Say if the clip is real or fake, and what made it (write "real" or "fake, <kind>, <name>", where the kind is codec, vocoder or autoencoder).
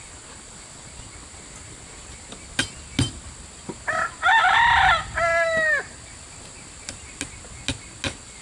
real